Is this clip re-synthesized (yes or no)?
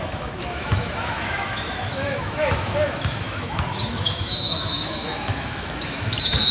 yes